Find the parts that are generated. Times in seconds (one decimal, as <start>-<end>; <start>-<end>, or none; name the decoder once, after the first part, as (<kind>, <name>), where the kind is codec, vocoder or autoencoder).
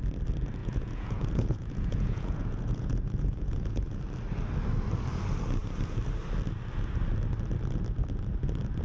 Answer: 0.6-4.0 (vocoder, Vocos)